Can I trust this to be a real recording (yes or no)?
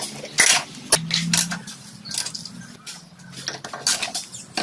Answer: yes